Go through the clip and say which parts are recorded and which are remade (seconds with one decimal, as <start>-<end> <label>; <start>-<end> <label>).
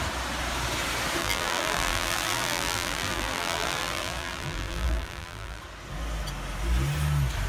0.0-1.2 recorded; 1.2-5.6 remade; 5.6-7.5 recorded